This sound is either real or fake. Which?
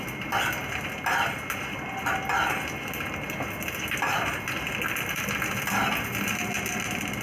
real